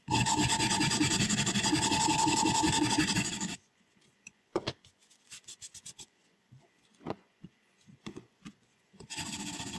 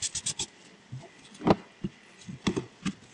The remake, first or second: first